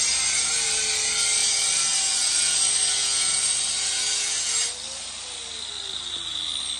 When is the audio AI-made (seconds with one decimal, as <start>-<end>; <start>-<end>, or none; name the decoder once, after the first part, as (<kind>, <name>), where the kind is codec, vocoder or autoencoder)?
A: none